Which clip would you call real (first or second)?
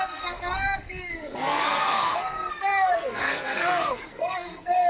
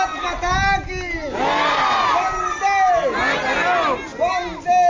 second